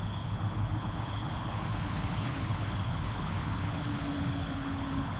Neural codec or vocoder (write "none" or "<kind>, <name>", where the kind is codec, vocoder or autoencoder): codec, HILCodec